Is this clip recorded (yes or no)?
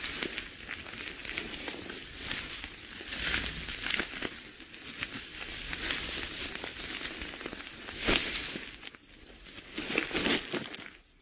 yes